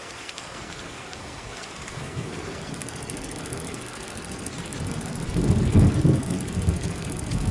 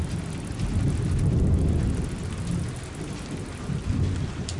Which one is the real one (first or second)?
second